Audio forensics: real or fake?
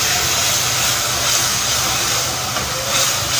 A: real